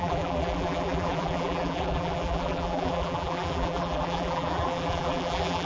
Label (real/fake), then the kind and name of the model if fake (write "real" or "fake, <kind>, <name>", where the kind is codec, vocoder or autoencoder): fake, vocoder, BigVGAN v2